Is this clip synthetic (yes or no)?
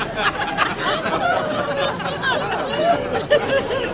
no